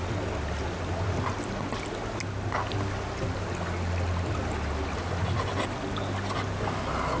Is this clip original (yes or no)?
yes